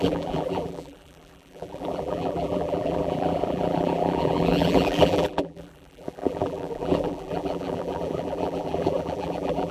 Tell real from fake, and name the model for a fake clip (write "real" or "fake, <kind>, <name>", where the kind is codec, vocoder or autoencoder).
fake, vocoder, BigVGAN v2